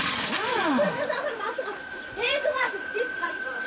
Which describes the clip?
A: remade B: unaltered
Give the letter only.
A